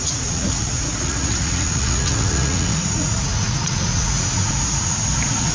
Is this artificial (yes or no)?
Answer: yes